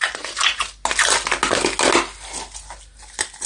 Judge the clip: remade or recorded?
recorded